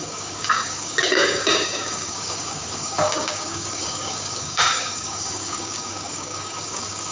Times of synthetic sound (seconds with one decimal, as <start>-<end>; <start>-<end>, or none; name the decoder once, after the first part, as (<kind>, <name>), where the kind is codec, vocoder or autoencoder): 0.0-7.1 (codec, DAC)